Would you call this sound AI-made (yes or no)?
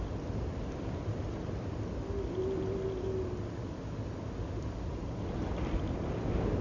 no